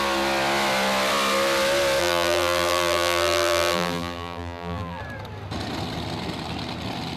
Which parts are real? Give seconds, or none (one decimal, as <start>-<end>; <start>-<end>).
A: 0.0-2.0; 5.0-7.2

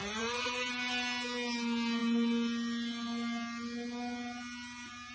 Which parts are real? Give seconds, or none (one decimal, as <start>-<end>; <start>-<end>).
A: 0.7-5.1

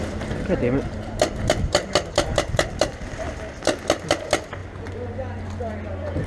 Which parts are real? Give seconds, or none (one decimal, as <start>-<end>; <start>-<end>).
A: 3.8-6.3

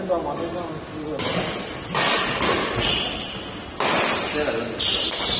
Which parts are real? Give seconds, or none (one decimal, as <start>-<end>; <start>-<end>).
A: 0.0-5.4

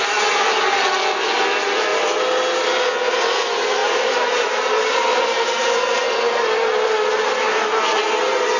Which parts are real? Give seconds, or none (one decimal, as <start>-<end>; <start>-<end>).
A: 0.0-3.8; 6.1-8.6

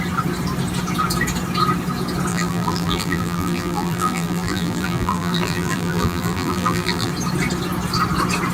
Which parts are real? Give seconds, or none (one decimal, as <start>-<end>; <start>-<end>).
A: 0.0-2.3; 7.1-8.5